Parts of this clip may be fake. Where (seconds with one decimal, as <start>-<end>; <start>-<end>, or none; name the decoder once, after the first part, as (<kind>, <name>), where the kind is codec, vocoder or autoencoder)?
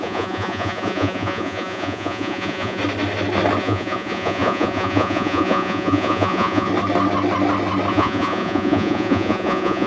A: 0.0-2.8 (vocoder, Vocos); 3.6-6.7; 7.9-9.9